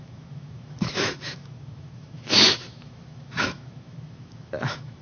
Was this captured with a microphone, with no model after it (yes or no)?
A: no